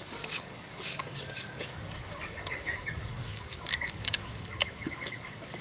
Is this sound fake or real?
fake